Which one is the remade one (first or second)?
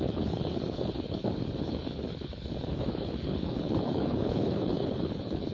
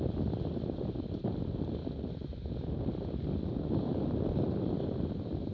first